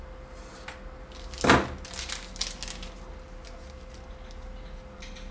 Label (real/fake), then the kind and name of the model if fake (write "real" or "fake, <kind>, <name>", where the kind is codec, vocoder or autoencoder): real